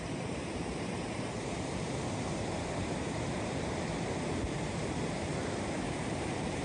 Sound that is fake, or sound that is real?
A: fake